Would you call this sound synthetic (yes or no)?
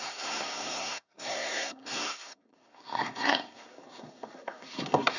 yes